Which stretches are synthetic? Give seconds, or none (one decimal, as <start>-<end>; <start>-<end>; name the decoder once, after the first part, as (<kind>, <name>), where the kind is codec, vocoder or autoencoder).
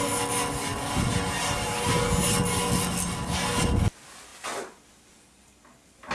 none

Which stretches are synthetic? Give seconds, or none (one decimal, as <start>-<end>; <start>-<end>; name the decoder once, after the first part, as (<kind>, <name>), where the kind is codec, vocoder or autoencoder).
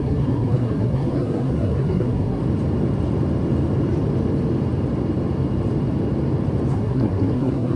0.0-2.4 (codec, SNAC); 6.7-7.8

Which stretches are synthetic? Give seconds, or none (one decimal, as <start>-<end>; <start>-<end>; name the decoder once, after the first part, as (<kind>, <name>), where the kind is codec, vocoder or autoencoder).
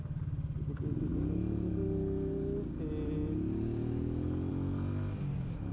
none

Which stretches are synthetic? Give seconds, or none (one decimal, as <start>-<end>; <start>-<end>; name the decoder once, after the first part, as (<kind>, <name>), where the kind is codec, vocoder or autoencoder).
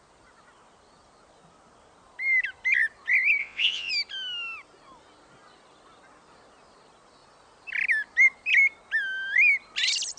3.4-3.9 (vocoder, WaveNeXt)